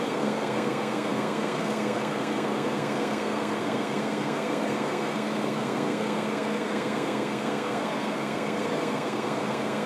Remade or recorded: remade